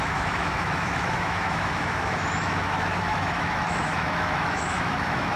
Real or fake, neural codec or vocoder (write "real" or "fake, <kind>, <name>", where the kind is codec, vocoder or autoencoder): fake, autoencoder, DAC-VAE